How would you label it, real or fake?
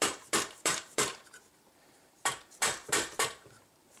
fake